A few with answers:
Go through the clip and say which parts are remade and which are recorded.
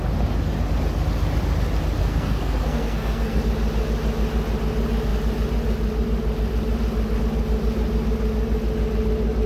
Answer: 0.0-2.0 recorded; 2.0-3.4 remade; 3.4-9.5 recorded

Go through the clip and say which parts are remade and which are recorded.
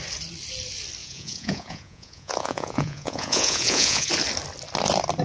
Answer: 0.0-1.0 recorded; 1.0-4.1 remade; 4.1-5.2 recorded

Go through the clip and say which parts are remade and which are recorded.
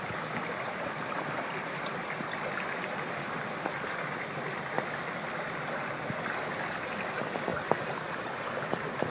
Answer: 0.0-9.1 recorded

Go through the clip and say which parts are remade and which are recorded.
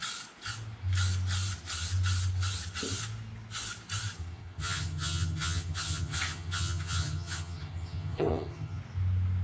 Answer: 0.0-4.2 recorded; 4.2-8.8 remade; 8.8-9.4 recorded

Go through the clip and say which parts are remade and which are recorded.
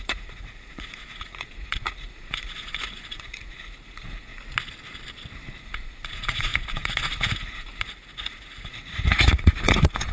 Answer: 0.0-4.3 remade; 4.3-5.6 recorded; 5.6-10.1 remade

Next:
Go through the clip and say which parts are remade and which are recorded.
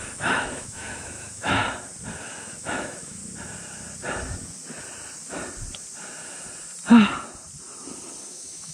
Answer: 0.0-1.6 remade; 1.6-2.2 recorded; 2.2-3.2 remade; 3.2-8.2 recorded; 8.2-8.7 remade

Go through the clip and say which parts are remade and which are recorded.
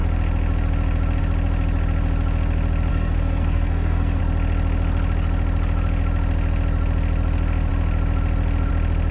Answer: 0.0-2.9 recorded; 2.9-4.2 remade; 4.2-9.1 recorded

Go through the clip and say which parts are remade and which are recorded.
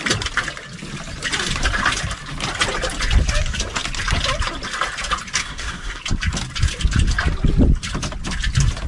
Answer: 0.0-5.4 recorded; 5.4-6.0 remade; 6.0-8.9 recorded